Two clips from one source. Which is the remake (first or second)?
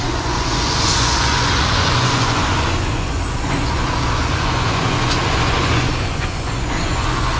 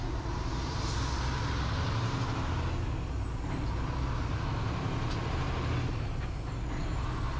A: first